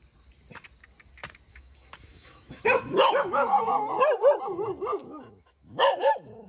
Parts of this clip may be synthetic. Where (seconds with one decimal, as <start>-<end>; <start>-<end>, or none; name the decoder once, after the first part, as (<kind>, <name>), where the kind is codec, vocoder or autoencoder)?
1.5-3.5 (autoencoder, DAC-VAE); 5.0-6.5